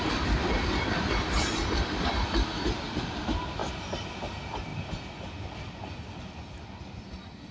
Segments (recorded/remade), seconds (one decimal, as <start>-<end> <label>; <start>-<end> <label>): 0.0-7.5 recorded

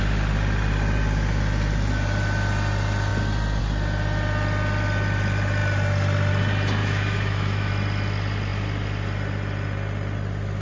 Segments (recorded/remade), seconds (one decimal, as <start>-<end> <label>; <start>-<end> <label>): 0.0-6.8 recorded; 6.8-7.7 remade; 7.7-10.6 recorded

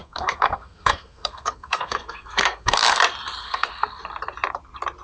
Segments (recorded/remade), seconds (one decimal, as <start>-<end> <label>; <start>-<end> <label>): 0.0-3.0 remade; 3.0-3.4 recorded; 3.4-4.0 remade; 4.0-5.0 recorded

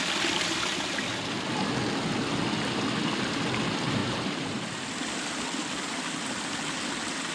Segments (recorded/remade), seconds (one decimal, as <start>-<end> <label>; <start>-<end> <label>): 0.0-4.0 recorded; 4.0-4.7 remade; 4.7-7.3 recorded

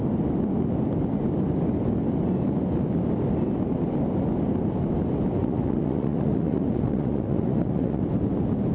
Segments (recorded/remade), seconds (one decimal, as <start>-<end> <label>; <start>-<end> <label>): 0.0-5.4 recorded; 5.4-8.0 remade; 8.0-8.7 recorded